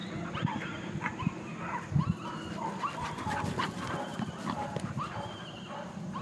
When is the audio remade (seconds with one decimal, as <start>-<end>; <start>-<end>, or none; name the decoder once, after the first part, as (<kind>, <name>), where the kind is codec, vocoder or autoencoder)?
none